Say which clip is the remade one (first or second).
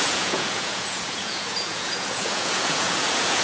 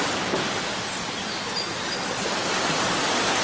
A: first